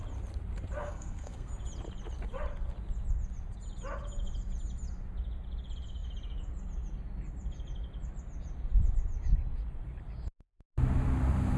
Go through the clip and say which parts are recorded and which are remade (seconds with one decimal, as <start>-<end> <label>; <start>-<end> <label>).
0.0-0.8 recorded; 0.8-1.5 remade; 1.5-11.6 recorded